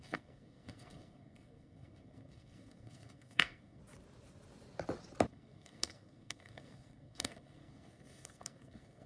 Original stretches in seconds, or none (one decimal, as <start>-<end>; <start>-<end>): 3.8-5.3